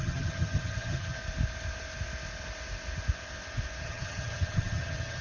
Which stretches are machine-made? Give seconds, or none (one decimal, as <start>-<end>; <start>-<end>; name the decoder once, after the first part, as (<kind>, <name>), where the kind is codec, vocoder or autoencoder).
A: 0.0-1.2 (vocoder, HiFi-GAN); 3.8-5.2